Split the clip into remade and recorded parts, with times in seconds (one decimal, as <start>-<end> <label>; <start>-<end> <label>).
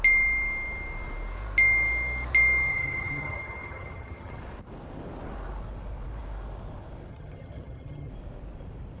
0.0-2.7 recorded; 2.7-4.4 remade; 4.4-7.1 recorded; 7.1-8.1 remade; 8.1-9.0 recorded